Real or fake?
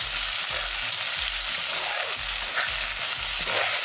real